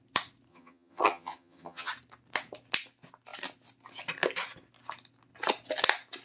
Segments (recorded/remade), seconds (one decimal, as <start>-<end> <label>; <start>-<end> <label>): 0.0-0.5 recorded; 0.5-1.9 remade; 1.9-6.2 recorded